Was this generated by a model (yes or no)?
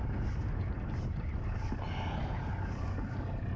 no